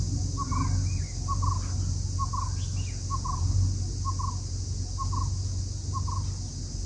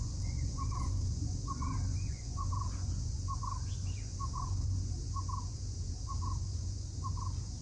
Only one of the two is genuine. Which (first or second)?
first